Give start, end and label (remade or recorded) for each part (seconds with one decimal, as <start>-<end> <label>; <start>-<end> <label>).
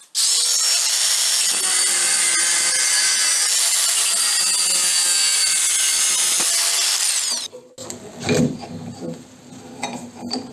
0.0-10.5 recorded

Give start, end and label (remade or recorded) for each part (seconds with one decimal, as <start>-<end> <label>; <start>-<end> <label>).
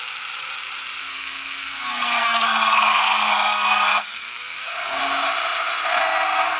0.0-1.0 recorded; 1.0-5.0 remade; 5.0-6.6 recorded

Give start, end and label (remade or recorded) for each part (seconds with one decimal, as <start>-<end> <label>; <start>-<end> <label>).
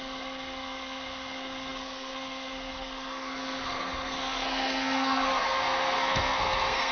0.0-6.9 remade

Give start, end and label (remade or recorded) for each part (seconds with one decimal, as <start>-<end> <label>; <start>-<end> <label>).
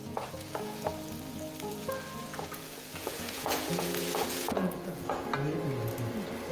0.0-0.9 remade; 0.9-1.7 recorded; 1.7-5.3 remade; 5.3-6.5 recorded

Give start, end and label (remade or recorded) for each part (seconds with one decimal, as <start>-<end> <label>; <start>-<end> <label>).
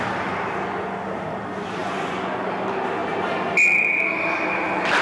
0.0-1.8 recorded; 1.8-2.5 remade; 2.5-5.0 recorded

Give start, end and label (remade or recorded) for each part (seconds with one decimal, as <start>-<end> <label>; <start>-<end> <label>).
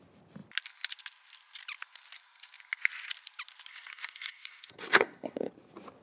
0.0-3.7 recorded; 3.7-5.5 remade; 5.5-6.0 recorded